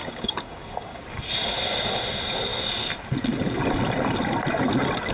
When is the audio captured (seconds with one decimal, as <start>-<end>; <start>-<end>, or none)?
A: 1.0-5.1